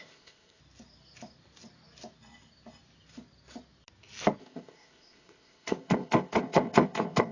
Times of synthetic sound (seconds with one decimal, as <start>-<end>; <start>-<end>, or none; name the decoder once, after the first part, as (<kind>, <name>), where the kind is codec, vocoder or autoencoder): 0.0-0.6 (codec, ZipCodec); 4.4-7.3